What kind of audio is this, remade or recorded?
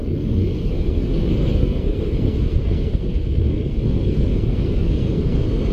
remade